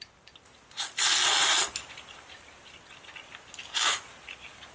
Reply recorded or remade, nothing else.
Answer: recorded